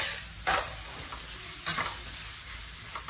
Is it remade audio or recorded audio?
recorded